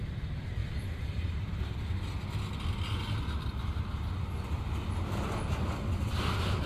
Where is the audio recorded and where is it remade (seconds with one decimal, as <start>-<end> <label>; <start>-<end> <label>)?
0.0-0.6 recorded; 0.6-1.8 remade; 1.8-6.7 recorded

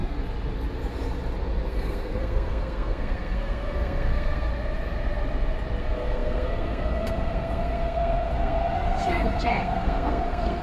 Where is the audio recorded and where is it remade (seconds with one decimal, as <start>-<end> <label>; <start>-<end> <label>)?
0.0-1.7 recorded; 1.7-4.5 remade; 4.5-5.8 recorded; 5.8-10.6 remade

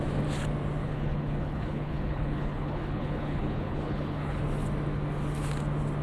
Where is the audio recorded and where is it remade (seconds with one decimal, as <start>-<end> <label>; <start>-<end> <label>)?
0.0-0.8 recorded; 0.8-4.4 remade; 4.4-6.0 recorded

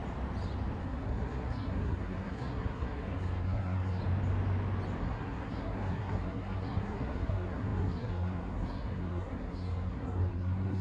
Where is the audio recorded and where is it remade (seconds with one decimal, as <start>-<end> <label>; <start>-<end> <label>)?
0.0-0.8 recorded; 0.8-4.0 remade; 4.0-5.0 recorded; 5.0-10.8 remade